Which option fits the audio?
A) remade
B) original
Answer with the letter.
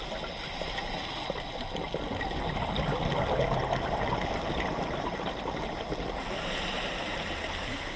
B